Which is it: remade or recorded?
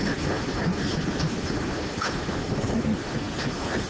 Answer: recorded